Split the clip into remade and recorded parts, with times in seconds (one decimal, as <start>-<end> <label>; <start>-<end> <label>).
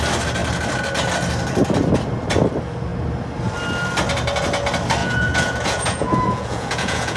0.0-5.0 recorded; 5.0-7.2 remade